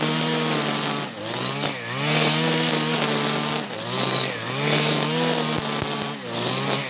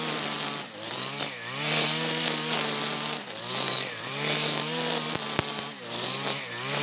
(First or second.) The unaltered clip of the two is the first